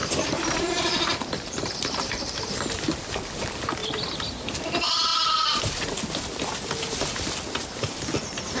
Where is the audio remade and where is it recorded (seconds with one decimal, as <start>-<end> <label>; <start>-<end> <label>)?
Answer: 0.0-2.4 remade; 2.4-3.8 recorded; 3.8-4.6 remade; 4.6-8.6 recorded